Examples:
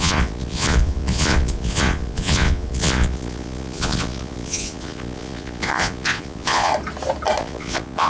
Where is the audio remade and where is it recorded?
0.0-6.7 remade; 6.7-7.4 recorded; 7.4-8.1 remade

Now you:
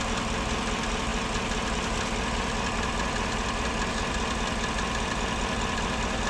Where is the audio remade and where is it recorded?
0.0-6.3 recorded

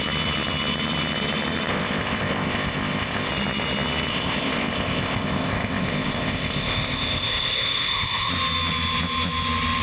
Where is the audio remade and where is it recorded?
0.0-1.7 recorded; 1.7-3.3 remade; 3.3-4.1 recorded; 4.1-8.3 remade; 8.3-9.8 recorded